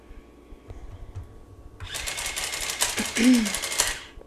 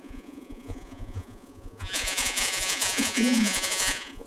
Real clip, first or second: first